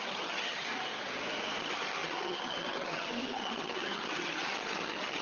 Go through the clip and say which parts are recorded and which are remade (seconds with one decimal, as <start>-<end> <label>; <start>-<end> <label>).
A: 0.0-0.7 remade; 0.7-1.6 recorded; 1.6-5.2 remade